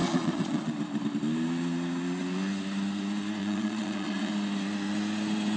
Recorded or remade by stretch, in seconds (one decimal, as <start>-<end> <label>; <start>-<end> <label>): 0.0-0.7 remade; 0.7-3.4 recorded; 3.4-4.3 remade; 4.3-5.6 recorded